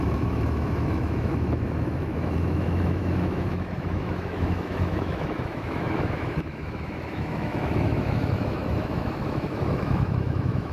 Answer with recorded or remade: remade